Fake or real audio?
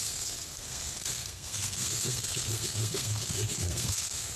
fake